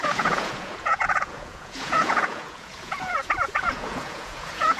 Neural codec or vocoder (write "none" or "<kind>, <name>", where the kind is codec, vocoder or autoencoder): vocoder, Vocos